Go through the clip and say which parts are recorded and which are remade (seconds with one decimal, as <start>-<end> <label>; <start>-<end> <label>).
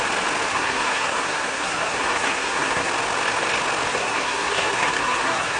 0.0-0.5 recorded; 0.5-2.9 remade; 2.9-3.9 recorded; 3.9-5.6 remade